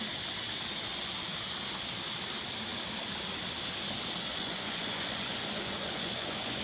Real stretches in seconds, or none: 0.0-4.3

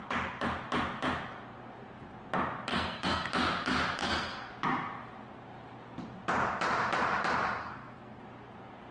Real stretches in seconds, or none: 0.0-2.7; 3.3-4.0; 4.5-7.6; 8.2-8.9

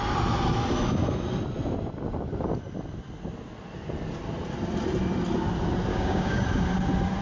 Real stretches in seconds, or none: 0.0-5.9; 6.4-7.2

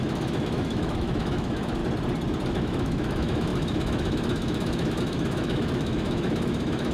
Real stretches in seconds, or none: 1.8-2.5

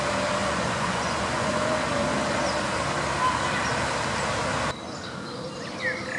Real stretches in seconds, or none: 0.0-0.4; 1.7-6.2

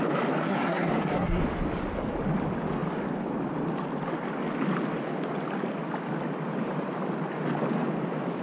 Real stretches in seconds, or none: 0.0-0.4; 1.4-8.4

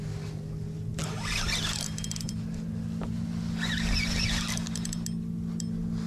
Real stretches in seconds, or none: 0.0-6.1

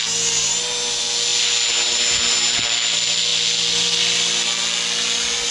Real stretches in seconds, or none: 0.0-5.5